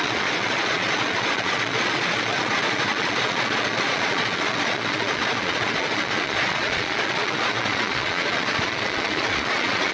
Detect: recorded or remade remade